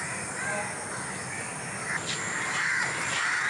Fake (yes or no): no